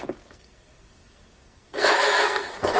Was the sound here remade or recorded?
remade